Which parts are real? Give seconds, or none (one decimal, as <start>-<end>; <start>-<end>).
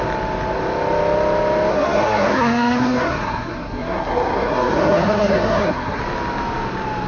0.0-1.7; 6.0-7.1